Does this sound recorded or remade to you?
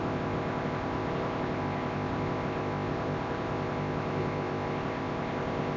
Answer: remade